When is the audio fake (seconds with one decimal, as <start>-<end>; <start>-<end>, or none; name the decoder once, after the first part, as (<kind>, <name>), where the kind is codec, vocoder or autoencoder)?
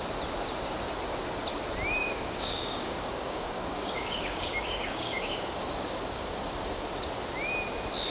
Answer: 2.0-6.8 (codec, DAC)